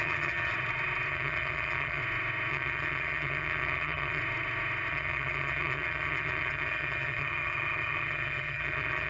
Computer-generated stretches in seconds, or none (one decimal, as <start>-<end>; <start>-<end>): 0.0-0.5; 1.1-2.0; 2.5-4.2; 4.9-9.1